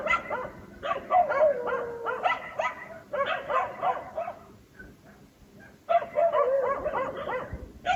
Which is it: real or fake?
real